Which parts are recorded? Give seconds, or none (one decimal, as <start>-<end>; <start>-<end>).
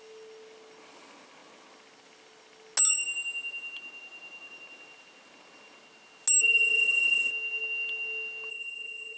0.0-6.4; 7.3-8.5